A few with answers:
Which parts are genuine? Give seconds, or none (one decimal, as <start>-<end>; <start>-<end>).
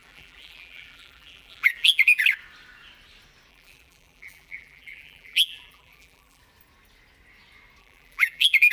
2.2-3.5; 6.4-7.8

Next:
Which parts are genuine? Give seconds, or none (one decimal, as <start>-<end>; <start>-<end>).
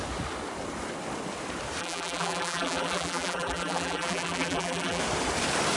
0.0-1.8; 5.0-5.8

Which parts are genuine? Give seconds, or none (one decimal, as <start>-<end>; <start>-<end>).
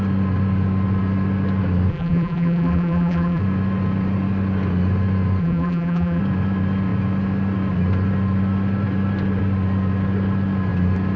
0.0-1.9; 3.4-5.4; 6.2-11.2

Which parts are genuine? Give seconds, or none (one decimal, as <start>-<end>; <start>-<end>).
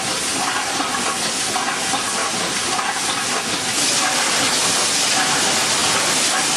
0.0-2.2; 3.2-6.6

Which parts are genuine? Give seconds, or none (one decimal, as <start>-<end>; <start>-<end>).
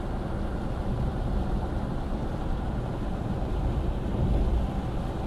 0.0-1.1; 4.3-5.3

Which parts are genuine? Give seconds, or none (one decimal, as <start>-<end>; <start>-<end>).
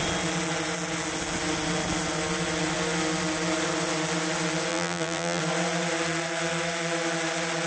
0.0-4.7; 5.4-7.7